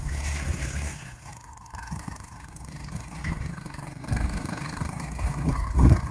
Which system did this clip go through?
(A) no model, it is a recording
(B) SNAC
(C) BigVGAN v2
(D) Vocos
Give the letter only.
B